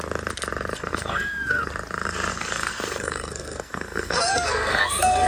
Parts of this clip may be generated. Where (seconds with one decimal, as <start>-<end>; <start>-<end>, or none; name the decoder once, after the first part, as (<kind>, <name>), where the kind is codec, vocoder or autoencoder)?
0.7-1.7 (codec, SNAC); 2.3-5.3